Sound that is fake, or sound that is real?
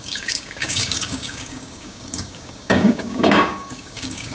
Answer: fake